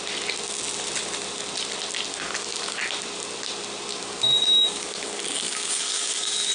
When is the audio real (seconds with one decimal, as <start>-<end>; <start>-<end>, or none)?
0.0-2.1; 2.8-3.9